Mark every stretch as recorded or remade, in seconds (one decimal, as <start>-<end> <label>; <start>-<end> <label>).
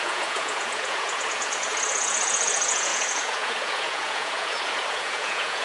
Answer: 0.0-5.6 remade